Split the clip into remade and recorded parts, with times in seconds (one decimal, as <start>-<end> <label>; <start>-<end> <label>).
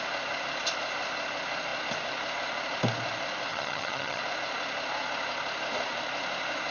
0.0-3.5 recorded; 3.5-4.2 remade; 4.2-6.7 recorded